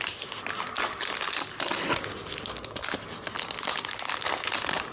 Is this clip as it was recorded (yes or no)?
yes